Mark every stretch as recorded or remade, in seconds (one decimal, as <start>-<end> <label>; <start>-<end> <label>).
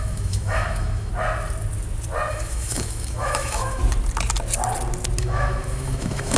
0.0-1.1 remade; 1.1-2.3 recorded; 2.3-3.8 remade; 3.8-5.2 recorded; 5.2-6.4 remade